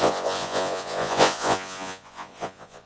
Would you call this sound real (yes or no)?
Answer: no